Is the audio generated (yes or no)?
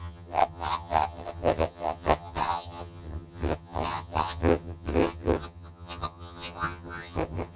yes